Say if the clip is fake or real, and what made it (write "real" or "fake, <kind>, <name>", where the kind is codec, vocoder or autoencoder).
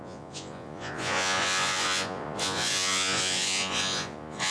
fake, vocoder, Vocos